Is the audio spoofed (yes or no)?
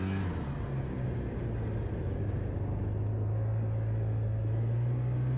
no